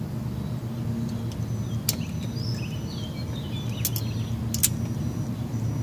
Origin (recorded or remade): recorded